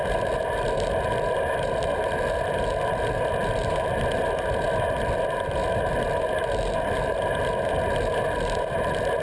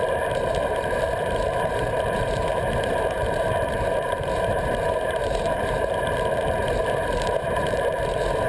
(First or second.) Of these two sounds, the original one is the first